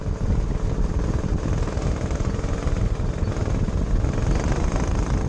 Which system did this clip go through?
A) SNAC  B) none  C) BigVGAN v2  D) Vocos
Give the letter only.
C